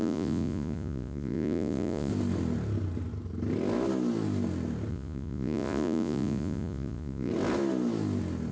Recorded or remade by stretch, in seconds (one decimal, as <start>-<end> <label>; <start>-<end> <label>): 0.0-2.1 remade; 2.1-4.9 recorded; 4.9-7.3 remade; 7.3-8.5 recorded